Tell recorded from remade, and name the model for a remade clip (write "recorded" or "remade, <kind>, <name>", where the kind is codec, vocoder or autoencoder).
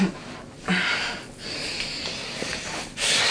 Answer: recorded